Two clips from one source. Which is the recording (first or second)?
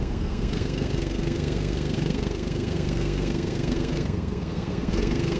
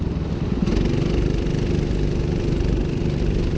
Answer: second